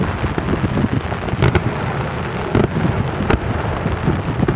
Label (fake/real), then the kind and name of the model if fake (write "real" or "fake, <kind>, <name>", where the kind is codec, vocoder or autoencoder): real